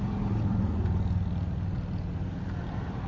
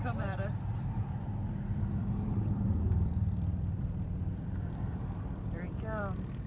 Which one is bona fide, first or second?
first